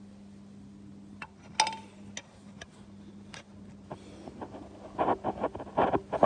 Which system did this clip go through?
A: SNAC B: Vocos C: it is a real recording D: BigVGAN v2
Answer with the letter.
C